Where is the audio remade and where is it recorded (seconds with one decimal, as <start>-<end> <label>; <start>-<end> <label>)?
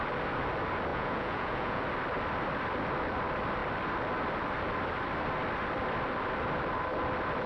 0.0-0.9 recorded; 0.9-1.8 remade; 1.8-7.5 recorded